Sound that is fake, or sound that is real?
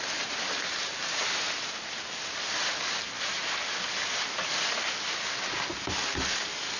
real